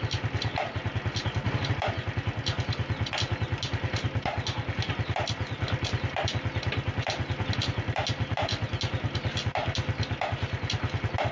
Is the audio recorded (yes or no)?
yes